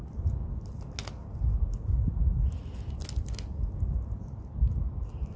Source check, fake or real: real